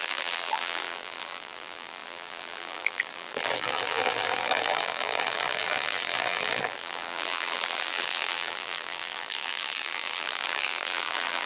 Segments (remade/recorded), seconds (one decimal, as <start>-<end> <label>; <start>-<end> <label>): 0.0-11.5 remade